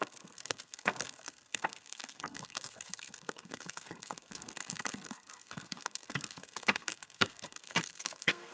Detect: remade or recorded remade